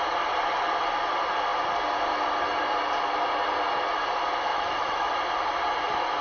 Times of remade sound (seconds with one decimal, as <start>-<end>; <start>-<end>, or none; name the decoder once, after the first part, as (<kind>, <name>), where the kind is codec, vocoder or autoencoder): 4.5-5.1 (autoencoder, DAC-VAE)